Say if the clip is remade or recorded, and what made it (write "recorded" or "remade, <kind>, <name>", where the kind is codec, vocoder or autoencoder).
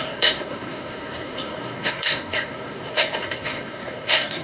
remade, codec, SNAC